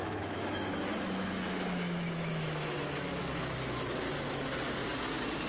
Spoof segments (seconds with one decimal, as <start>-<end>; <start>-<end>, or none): 0.0-3.3